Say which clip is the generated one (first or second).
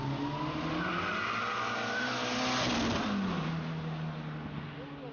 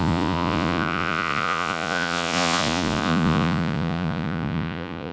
second